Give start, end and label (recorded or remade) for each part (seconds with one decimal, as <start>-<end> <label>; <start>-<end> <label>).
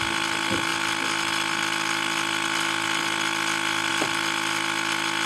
0.0-5.3 recorded